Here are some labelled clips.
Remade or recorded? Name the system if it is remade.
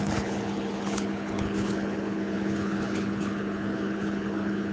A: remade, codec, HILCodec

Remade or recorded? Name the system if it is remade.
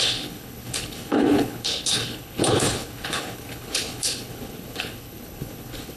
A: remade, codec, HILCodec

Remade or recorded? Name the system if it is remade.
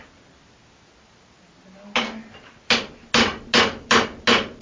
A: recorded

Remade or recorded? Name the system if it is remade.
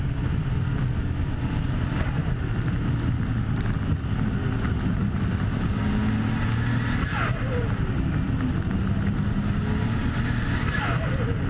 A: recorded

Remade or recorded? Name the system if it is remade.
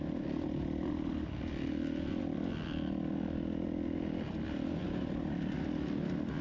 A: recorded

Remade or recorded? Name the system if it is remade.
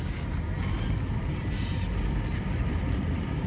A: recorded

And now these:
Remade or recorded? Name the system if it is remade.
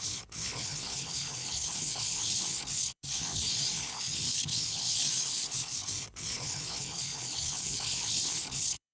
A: remade, codec, HILCodec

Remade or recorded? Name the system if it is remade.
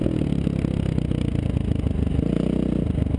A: recorded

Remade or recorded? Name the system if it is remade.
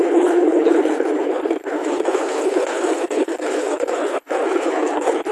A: remade, codec, HILCodec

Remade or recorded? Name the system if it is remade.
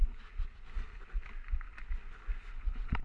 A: recorded